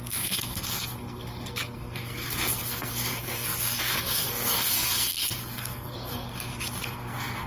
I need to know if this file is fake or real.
fake